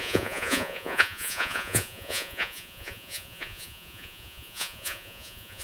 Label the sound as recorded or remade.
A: remade